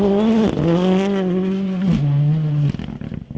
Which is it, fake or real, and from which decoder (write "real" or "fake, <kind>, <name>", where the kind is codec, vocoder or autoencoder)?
real